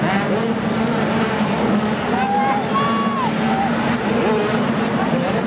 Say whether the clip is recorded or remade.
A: recorded